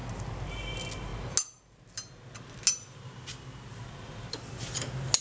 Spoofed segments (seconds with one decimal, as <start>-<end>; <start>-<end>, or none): none

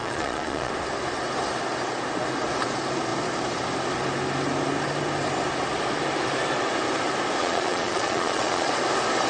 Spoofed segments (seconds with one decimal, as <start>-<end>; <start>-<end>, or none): 0.0-0.7; 7.4-8.7

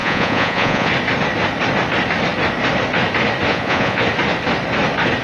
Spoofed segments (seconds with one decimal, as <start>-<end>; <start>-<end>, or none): 0.0-0.9; 3.5-4.0

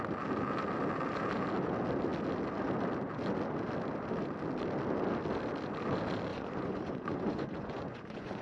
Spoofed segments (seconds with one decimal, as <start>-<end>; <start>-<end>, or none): 6.3-8.4

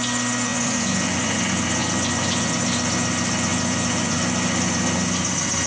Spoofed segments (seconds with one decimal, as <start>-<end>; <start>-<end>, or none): 0.5-1.4; 1.8-2.5; 3.5-4.2

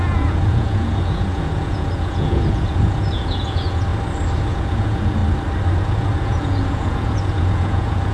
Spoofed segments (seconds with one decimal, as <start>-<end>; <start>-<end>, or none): 0.0-3.9; 4.5-5.2; 5.8-8.1

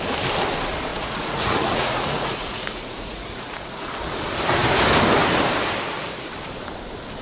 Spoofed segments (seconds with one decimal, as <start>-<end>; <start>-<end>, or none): 0.9-3.9

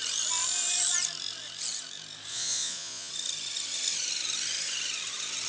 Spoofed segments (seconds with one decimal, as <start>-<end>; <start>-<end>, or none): 2.3-3.1